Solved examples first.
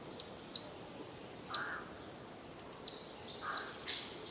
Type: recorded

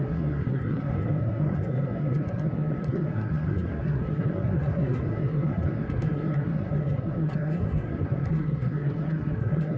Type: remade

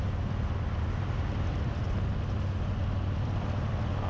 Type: recorded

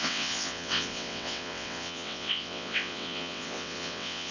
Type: remade